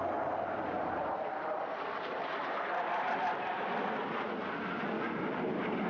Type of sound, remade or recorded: recorded